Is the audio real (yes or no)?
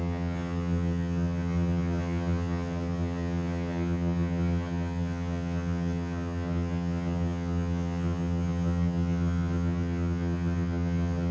no